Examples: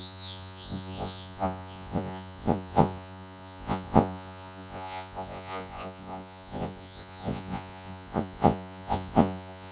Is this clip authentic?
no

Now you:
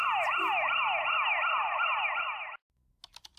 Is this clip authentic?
yes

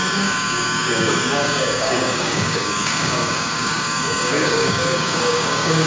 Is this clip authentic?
no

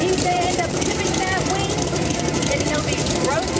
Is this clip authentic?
no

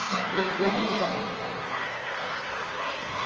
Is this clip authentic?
no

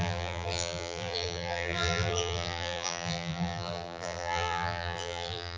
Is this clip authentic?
no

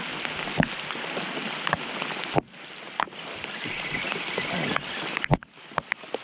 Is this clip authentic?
yes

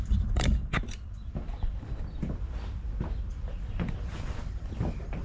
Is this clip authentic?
no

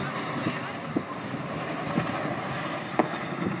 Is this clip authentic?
yes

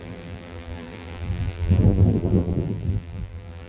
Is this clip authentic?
no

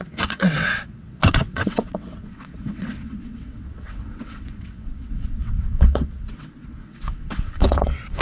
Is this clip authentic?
no